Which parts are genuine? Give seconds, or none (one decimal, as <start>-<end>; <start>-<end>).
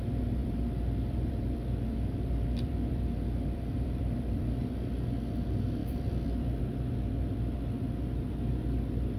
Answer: 0.0-0.4; 4.4-5.8; 6.6-9.2